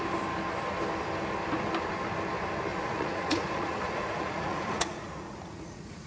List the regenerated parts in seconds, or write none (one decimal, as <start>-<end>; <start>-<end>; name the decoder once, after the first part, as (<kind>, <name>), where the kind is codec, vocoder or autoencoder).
2.7-6.1 (vocoder, Vocos)